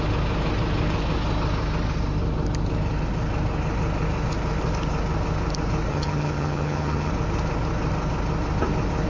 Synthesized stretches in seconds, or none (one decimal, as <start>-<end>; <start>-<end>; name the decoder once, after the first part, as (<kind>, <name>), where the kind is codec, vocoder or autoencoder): 5.9-7.1 (vocoder, HiFi-GAN)